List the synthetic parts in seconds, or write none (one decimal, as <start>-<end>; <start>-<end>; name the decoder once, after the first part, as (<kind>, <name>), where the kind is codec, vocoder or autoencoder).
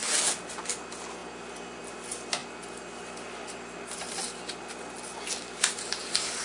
none